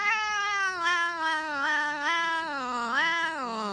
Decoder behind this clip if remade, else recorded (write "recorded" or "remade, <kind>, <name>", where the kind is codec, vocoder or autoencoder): remade, autoencoder, DAC-VAE